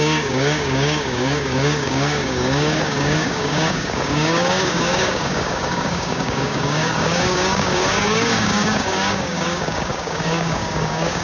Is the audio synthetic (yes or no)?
yes